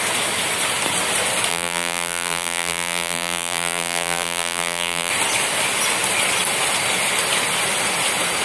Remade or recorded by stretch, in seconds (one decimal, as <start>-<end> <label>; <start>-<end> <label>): 0.0-1.5 recorded; 1.5-5.1 remade; 5.1-8.4 recorded